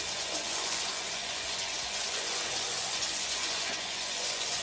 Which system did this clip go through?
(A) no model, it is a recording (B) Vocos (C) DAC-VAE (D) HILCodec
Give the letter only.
B